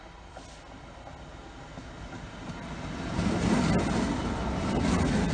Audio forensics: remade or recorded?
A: recorded